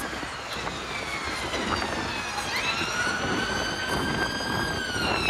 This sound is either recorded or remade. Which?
recorded